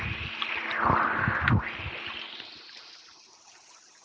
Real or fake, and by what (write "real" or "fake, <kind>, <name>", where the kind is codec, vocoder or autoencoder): real